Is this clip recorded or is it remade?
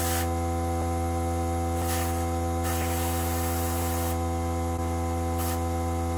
recorded